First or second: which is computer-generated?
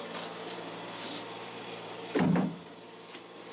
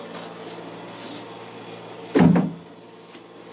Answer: first